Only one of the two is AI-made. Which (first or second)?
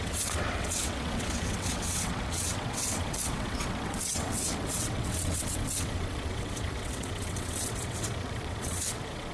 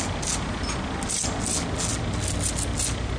first